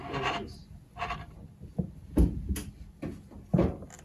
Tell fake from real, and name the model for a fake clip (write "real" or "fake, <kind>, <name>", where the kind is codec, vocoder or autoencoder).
real